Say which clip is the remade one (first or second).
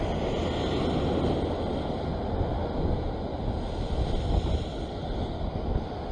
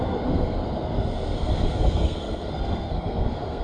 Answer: second